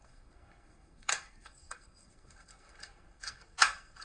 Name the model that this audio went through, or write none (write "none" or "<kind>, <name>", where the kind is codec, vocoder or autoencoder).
codec, SNAC